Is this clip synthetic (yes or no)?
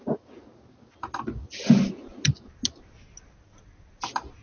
no